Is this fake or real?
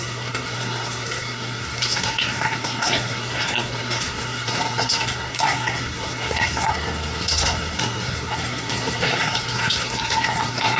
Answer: fake